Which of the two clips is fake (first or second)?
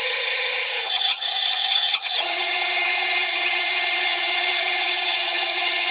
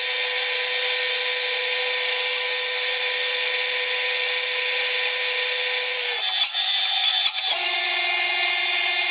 first